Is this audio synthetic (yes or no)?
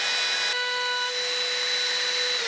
no